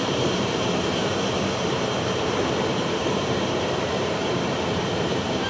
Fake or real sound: fake